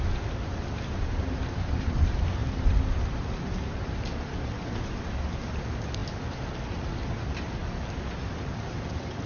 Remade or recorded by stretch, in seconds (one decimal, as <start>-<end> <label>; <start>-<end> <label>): 0.0-9.3 recorded